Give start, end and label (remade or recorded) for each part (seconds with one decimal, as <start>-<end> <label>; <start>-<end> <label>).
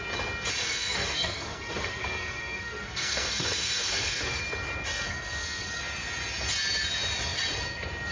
0.0-0.6 recorded; 0.6-4.4 remade; 4.4-4.9 recorded; 4.9-5.8 remade; 5.8-8.1 recorded